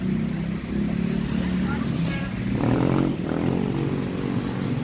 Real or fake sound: real